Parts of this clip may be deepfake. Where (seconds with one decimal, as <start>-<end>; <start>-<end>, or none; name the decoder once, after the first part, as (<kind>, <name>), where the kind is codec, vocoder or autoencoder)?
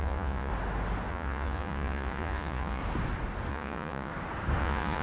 0.0-0.5 (vocoder, Vocos); 1.1-2.8; 3.5-4.1; 4.6-5.0